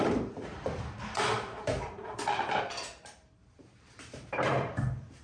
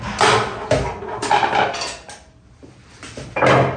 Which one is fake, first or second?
first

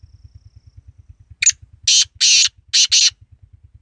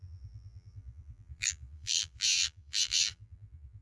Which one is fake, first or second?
second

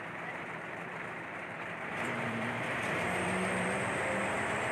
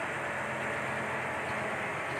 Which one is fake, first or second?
first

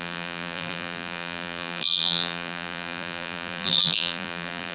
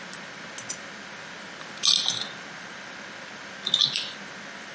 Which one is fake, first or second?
first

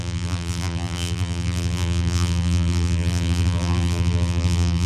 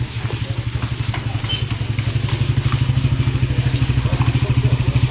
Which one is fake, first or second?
first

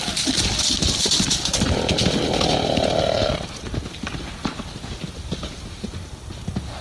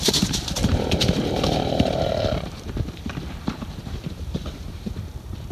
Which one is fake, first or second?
second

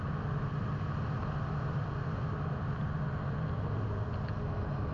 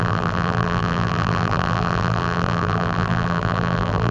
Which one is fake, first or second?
second